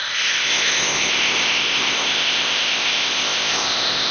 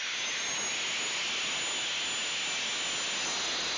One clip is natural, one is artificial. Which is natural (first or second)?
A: second